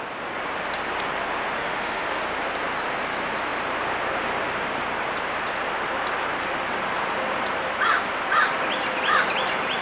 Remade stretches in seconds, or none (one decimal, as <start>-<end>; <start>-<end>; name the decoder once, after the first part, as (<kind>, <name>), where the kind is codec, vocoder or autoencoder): 1.6-2.2 (autoencoder, DAC-VAE)